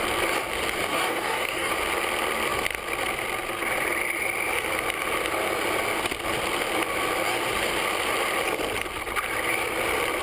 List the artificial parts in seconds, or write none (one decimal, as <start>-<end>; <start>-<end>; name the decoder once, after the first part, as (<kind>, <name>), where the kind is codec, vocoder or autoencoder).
0.9-1.7 (codec, DAC)